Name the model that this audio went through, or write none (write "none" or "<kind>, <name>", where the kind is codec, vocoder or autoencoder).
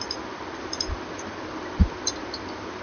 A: none